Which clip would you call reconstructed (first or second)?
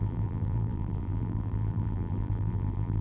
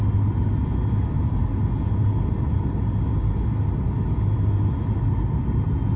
first